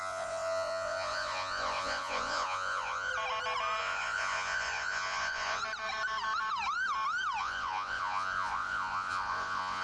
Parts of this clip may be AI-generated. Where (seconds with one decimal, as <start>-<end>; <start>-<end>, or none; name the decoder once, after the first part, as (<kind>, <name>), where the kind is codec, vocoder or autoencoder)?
0.0-3.1 (vocoder, Vocos); 3.8-5.6; 7.4-9.8